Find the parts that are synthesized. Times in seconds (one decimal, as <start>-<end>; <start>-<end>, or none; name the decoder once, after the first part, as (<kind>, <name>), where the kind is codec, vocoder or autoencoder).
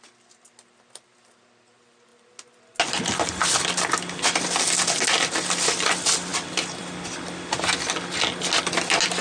none